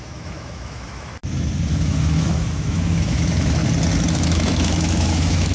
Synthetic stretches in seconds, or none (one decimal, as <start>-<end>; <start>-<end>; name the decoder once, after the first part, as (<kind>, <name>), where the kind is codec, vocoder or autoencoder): 0.0-1.1 (autoencoder, DAC-VAE); 1.7-3.6; 4.1-5.5